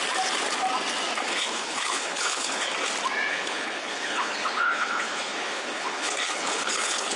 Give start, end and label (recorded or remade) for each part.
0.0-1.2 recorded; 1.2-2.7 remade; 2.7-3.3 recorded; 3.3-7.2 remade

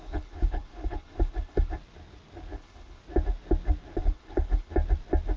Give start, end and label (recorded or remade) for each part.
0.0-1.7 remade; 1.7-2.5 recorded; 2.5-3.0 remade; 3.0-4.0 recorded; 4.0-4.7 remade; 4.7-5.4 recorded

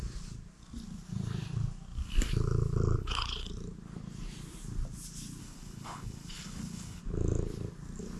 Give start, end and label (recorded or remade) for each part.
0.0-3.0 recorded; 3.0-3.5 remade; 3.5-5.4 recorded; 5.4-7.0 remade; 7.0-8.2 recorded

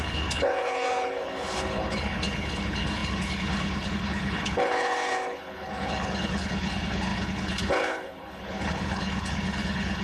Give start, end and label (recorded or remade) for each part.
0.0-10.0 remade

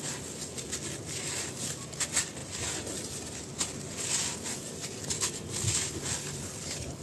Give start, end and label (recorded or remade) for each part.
0.0-6.2 recorded; 6.2-7.0 remade

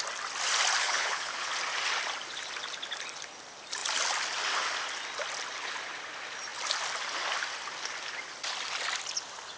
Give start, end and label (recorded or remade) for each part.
0.0-0.8 recorded; 0.8-1.5 remade; 1.5-9.6 recorded